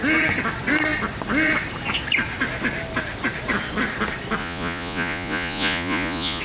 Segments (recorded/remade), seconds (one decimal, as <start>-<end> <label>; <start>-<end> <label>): 0.0-4.4 recorded; 4.4-6.4 remade